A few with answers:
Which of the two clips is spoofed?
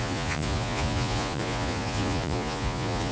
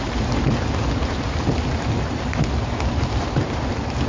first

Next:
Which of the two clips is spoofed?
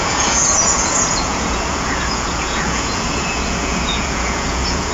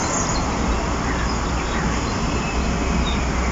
first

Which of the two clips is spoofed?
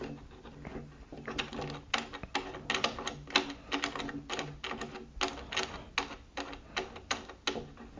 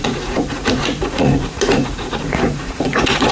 second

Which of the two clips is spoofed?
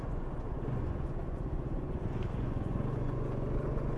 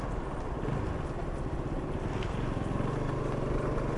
first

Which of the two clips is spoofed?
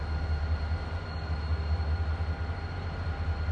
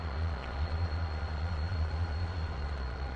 second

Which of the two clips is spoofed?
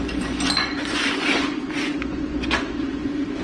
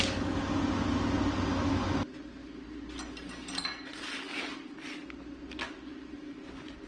first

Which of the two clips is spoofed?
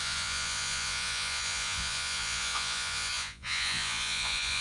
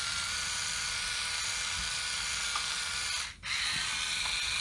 first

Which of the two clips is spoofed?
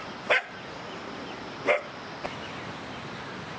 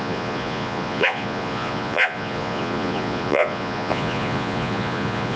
second